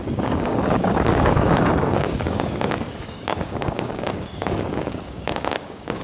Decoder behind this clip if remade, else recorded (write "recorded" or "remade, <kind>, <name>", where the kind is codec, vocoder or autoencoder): remade, codec, DAC